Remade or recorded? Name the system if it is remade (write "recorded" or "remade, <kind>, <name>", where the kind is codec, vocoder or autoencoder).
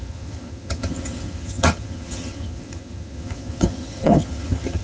remade, vocoder, HiFi-GAN